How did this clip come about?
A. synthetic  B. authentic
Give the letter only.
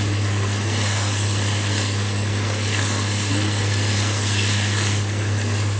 A